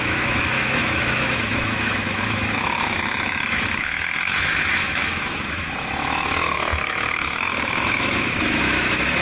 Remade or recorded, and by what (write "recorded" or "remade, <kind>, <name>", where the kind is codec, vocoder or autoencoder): remade, autoencoder, DAC-VAE